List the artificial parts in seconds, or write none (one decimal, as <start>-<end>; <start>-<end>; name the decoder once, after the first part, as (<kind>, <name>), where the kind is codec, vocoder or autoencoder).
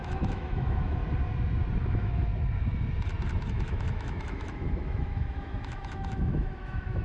0.0-1.0 (autoencoder, DAC-VAE); 1.8-2.3; 3.5-7.0